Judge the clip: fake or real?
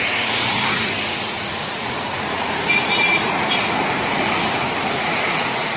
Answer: fake